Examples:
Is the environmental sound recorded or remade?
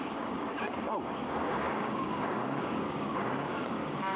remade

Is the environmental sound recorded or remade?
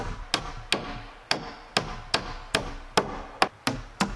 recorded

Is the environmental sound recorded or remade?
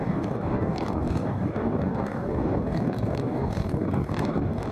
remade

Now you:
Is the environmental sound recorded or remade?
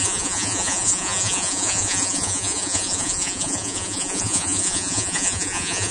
remade